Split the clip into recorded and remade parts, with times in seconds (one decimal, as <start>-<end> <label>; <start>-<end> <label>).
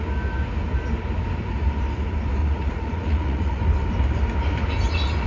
0.0-2.4 recorded; 2.4-3.6 remade; 3.6-5.3 recorded